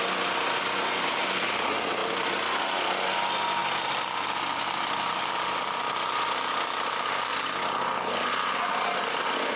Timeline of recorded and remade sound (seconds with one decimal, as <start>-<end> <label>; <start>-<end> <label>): 0.0-9.6 recorded